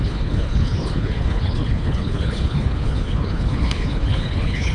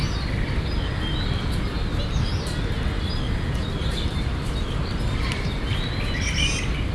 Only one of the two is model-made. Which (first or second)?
first